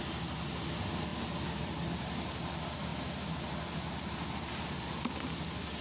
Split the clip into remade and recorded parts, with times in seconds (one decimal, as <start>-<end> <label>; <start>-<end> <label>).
0.0-5.8 recorded